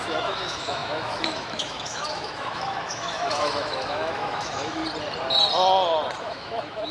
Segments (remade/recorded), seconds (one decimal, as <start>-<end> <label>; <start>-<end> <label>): 0.0-4.8 remade; 4.8-6.2 recorded; 6.2-6.9 remade